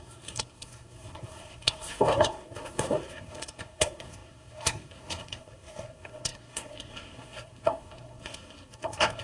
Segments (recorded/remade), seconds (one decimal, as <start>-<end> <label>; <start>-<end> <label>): 0.0-9.2 remade